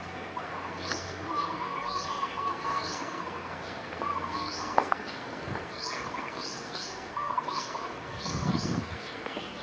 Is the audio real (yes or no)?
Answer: no